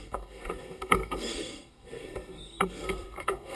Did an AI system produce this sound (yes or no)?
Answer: yes